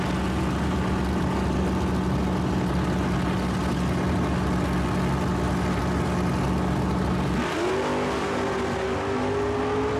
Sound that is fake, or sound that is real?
real